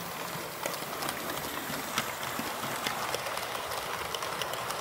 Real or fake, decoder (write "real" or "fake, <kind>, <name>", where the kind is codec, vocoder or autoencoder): real